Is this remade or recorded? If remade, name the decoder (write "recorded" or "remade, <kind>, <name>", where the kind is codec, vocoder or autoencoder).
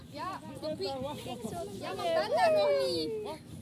recorded